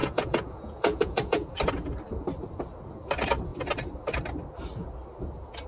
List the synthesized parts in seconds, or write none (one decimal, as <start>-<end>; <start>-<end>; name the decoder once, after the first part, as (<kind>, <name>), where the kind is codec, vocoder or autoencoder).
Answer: 0.0-1.5 (vocoder, Vocos)